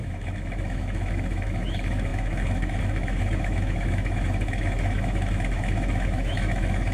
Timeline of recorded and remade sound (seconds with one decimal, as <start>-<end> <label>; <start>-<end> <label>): 0.0-6.9 remade